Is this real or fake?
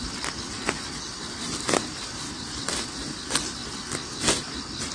real